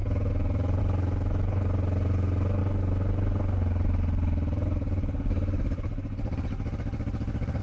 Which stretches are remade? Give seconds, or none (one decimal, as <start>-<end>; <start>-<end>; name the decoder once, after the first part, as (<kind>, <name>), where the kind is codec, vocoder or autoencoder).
0.0-0.8 (vocoder, Vocos)